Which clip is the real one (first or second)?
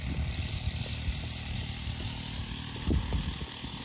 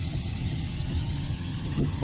first